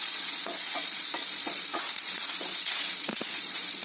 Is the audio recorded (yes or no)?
no